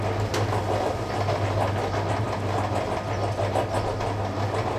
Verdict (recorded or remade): recorded